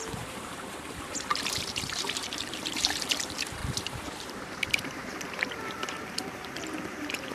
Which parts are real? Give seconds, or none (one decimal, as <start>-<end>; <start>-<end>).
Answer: none